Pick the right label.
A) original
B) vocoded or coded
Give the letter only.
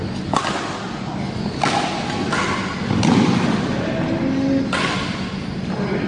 A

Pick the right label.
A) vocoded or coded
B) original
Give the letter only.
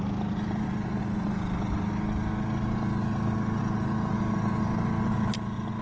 B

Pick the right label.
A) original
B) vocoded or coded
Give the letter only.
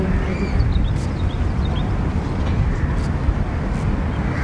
A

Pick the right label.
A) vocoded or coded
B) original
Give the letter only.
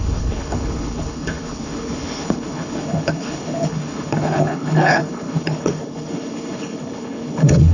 A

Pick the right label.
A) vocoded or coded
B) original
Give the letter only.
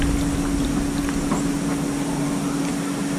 B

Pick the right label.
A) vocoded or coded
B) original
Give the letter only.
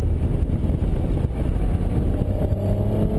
B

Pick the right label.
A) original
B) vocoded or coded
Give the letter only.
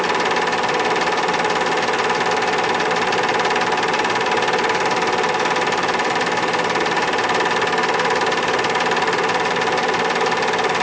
A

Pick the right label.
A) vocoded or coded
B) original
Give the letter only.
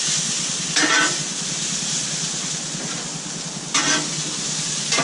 B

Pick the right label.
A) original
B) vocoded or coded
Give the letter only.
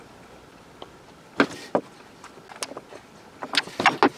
A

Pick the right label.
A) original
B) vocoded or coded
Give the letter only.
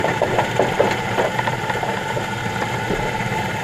B